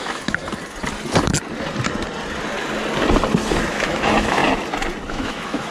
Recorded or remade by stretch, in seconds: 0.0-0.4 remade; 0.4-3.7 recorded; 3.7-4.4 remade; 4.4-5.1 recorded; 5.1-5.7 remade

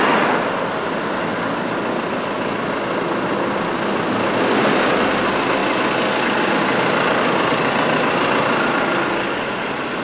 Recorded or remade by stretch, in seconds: 0.0-10.0 recorded

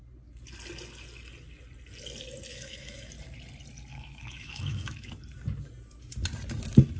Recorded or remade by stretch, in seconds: 0.0-2.5 recorded; 2.5-3.1 remade; 3.1-3.9 recorded; 3.9-5.1 remade; 5.1-7.0 recorded

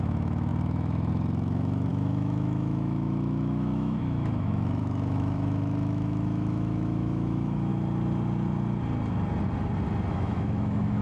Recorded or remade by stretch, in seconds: 0.0-7.7 remade; 7.7-10.1 recorded; 10.1-11.0 remade

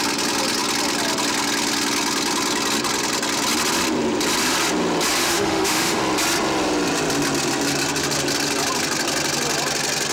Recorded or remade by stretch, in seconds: 0.0-5.2 recorded; 5.2-6.0 remade; 6.0-10.1 recorded

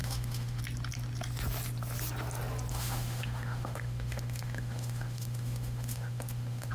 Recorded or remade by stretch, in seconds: 0.0-0.6 remade; 0.6-2.7 recorded; 2.7-6.7 remade

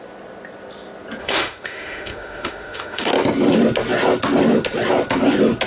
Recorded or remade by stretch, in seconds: 0.0-1.2 recorded; 1.2-3.1 remade; 3.1-5.7 recorded

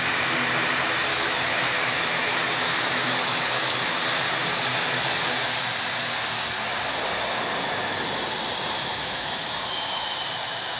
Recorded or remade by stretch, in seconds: 0.0-1.1 recorded; 1.1-4.0 remade; 4.0-8.8 recorded; 8.8-10.8 remade